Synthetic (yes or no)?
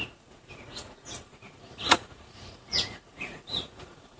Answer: yes